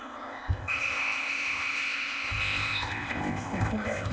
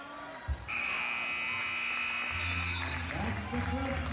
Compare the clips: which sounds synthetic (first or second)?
first